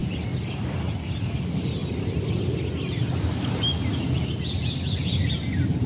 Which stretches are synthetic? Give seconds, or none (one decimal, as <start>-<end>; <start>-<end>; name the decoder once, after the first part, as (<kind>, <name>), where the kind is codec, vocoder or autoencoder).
0.5-1.8 (vocoder, BigVGAN v2); 5.3-5.9